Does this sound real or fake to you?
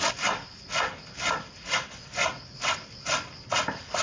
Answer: real